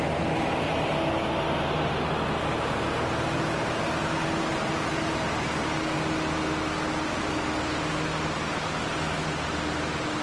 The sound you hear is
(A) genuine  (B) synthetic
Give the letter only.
A